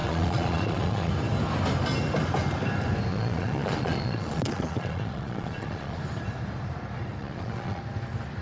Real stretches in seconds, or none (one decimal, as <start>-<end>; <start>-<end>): 1.1-3.1; 6.0-7.2; 7.8-8.4